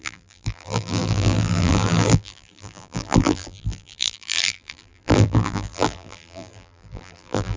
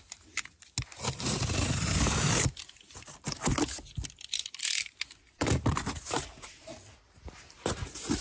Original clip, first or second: second